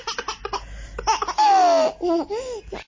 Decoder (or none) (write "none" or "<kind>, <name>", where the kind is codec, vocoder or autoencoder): none